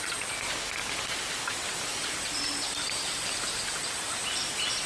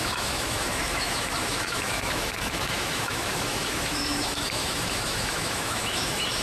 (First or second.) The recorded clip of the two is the first